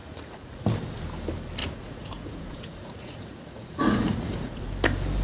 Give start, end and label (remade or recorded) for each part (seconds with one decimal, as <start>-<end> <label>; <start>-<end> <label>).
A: 0.0-0.6 remade; 0.6-1.6 recorded; 1.6-4.7 remade; 4.7-5.2 recorded